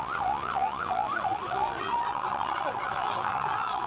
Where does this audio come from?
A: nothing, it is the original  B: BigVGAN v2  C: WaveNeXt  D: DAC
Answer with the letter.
C